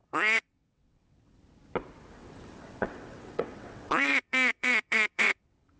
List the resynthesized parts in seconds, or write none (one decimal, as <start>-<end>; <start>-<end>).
0.0-1.4; 2.2-5.8